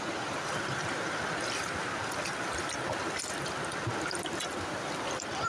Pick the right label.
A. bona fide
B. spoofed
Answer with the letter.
A